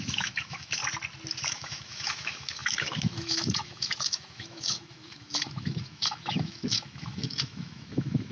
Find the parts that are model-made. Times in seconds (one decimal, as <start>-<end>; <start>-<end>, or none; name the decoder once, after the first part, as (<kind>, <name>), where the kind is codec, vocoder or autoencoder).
0.0-0.8 (autoencoder, DAC-VAE); 1.4-8.3